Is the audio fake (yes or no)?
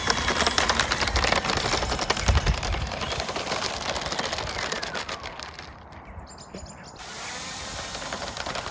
yes